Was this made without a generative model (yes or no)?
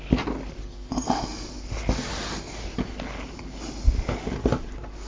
yes